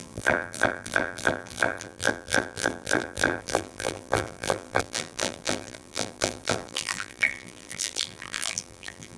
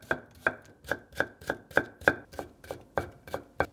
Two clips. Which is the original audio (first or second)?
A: second